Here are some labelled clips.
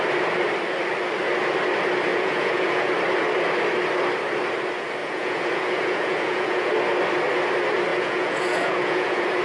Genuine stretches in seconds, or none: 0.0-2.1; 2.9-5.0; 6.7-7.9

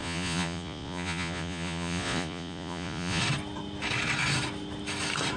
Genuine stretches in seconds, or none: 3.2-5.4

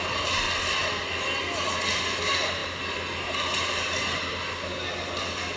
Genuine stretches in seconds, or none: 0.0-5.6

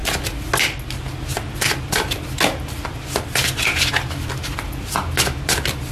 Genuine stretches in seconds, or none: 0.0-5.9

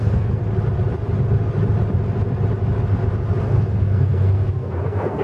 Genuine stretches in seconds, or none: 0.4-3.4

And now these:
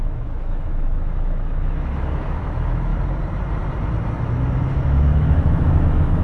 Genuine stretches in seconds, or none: 2.9-4.9

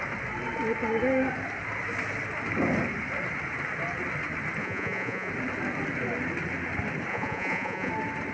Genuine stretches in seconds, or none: 0.0-4.6; 5.3-7.1; 7.9-8.3